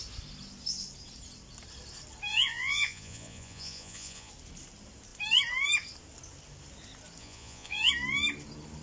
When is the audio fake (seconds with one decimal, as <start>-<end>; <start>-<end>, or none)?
2.3-4.3; 7.2-7.9